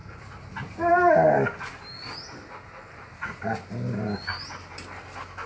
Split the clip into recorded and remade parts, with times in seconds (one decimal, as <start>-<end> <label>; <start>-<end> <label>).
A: 0.0-5.5 recorded